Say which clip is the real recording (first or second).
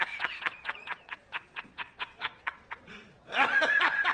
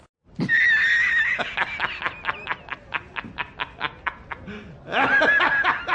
second